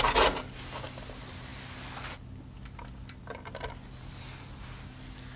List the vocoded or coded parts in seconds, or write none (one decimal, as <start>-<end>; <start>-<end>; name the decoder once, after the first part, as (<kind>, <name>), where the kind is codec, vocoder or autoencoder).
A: none